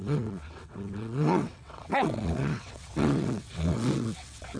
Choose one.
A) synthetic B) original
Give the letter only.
A